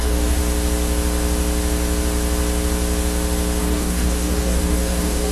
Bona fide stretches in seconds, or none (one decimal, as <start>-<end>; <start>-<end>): 0.4-3.6